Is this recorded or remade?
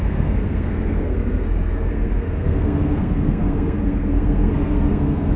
remade